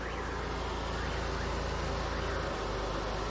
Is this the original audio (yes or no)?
yes